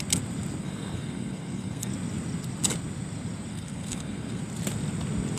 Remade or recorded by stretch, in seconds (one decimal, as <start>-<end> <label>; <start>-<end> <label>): 0.0-0.6 recorded; 0.6-1.9 remade; 1.9-3.5 recorded; 3.5-4.4 remade; 4.4-5.4 recorded